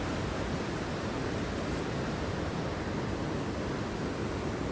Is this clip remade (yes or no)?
no